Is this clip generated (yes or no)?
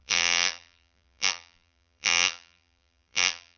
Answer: yes